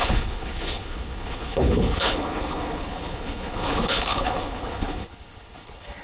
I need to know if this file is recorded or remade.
remade